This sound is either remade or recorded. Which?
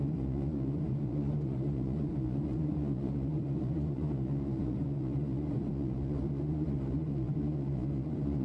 remade